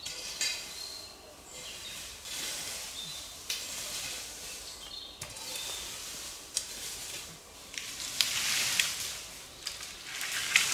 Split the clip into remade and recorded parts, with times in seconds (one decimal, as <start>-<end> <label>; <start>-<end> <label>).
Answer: 0.0-7.0 recorded; 7.0-8.0 remade; 8.0-10.7 recorded